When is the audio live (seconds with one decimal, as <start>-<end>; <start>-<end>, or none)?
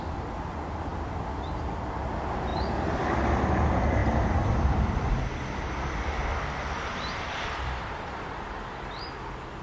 0.0-2.5; 3.5-4.0; 5.7-6.3; 9.1-9.6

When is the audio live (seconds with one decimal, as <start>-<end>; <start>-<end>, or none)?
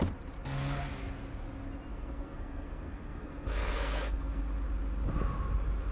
0.0-1.9; 4.4-5.9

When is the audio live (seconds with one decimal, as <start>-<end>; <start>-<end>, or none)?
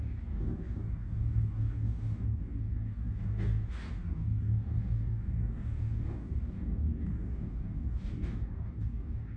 none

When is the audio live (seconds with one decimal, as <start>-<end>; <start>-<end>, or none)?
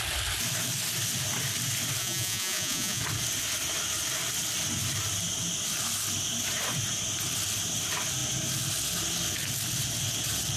0.0-2.0; 3.0-10.6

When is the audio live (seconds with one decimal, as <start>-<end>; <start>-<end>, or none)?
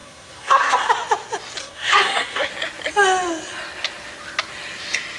0.9-1.6; 2.5-5.2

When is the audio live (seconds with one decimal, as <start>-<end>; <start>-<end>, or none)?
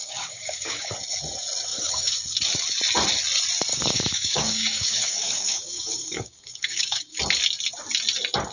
0.9-1.7; 2.2-3.7; 7.2-8.5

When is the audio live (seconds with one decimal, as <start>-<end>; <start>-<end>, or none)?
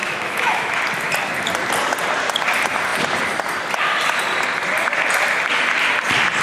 0.8-6.4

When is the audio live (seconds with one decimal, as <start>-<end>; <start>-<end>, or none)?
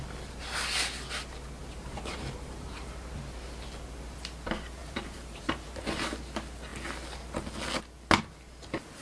0.0-1.6; 3.2-4.8; 6.2-9.0